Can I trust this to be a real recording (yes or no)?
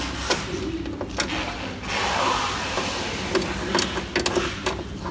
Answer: yes